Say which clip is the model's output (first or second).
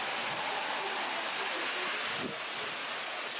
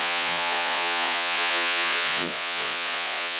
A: second